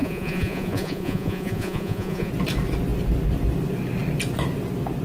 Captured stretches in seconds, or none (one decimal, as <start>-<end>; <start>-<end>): 2.3-5.0